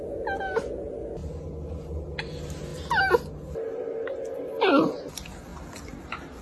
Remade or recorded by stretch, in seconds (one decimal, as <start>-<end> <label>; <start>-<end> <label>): 0.0-6.4 recorded